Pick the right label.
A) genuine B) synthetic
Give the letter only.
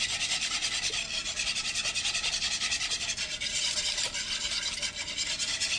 A